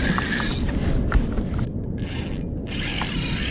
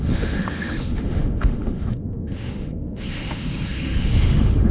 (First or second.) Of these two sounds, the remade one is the second